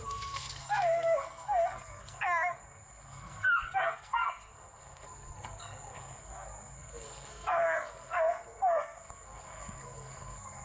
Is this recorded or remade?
remade